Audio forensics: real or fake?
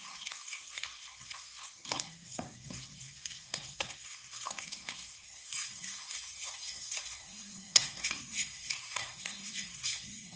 fake